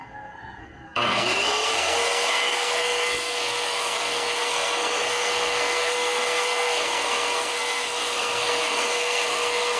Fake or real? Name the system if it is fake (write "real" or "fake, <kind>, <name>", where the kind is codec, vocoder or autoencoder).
fake, codec, SNAC